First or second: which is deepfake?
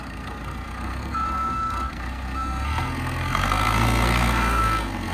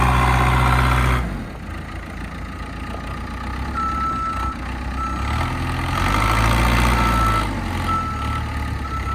first